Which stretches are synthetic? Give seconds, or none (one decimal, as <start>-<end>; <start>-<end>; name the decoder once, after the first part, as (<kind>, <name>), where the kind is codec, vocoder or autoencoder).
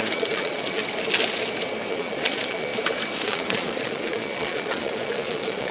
0.0-0.8 (vocoder, Vocos); 1.9-2.7; 3.2-5.7